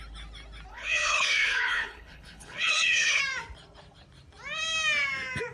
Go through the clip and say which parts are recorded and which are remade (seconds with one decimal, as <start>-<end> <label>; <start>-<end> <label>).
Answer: 0.0-0.7 recorded; 0.7-3.2 remade; 3.2-5.5 recorded